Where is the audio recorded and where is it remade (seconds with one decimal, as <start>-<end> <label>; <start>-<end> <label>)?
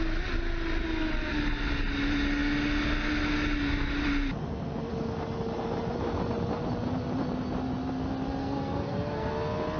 0.0-8.4 recorded; 8.4-9.3 remade; 9.3-9.8 recorded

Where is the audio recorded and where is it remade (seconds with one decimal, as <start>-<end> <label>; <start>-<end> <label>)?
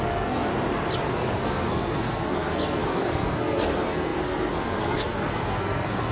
0.0-0.5 remade; 0.5-1.1 recorded; 1.1-6.1 remade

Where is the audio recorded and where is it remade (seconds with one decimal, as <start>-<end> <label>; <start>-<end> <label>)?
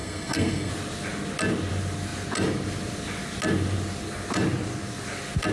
0.0-0.7 remade; 0.7-5.5 recorded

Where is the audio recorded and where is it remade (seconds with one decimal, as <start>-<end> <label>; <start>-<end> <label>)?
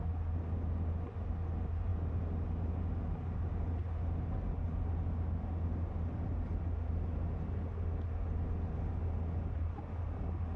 0.0-10.6 recorded